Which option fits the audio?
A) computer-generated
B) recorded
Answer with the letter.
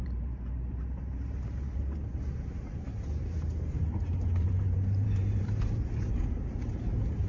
A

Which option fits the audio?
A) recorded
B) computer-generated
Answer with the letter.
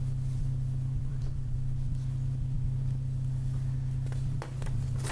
B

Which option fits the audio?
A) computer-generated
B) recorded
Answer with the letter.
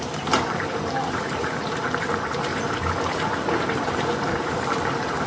A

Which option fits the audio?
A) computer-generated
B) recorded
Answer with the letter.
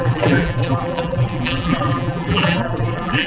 A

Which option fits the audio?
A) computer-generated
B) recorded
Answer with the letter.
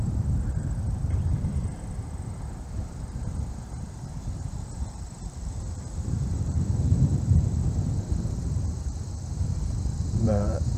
A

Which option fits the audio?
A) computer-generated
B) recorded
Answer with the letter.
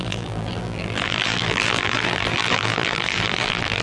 A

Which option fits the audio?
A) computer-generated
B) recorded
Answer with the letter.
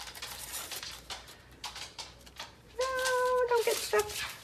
A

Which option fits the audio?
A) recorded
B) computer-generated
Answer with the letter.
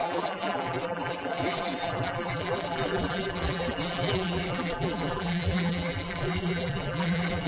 B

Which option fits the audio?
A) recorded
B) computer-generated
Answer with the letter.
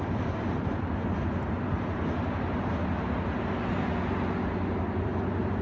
A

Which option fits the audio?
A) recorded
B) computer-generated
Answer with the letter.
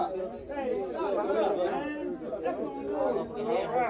A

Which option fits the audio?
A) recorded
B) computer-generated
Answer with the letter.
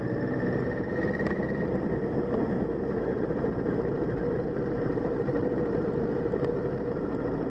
B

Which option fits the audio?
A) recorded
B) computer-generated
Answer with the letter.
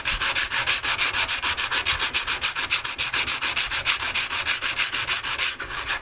A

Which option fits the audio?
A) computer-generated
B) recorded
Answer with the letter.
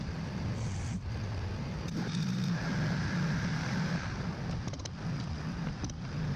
A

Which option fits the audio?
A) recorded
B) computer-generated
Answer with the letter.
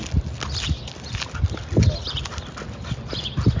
A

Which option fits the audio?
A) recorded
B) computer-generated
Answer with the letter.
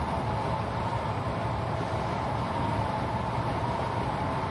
B